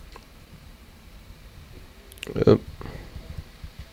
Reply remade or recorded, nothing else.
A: remade